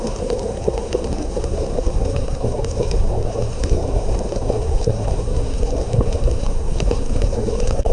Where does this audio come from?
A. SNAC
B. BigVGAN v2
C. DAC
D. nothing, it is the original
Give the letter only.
A